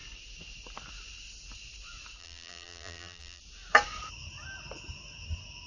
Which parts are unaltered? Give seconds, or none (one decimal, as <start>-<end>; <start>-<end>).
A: 0.0-2.2; 3.4-5.7